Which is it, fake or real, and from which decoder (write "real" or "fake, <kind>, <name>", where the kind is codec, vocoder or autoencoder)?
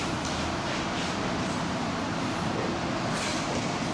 real